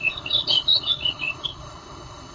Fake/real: fake